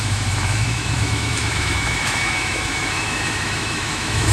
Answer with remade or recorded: remade